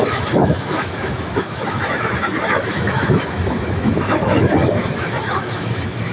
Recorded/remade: remade